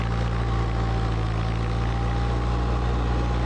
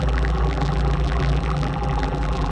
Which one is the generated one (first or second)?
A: second